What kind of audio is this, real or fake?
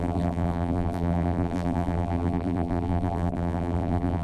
fake